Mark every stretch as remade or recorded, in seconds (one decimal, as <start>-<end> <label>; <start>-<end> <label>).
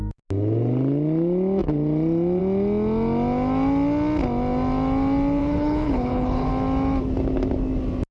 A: 0.0-5.4 recorded; 5.4-6.5 remade; 6.5-8.1 recorded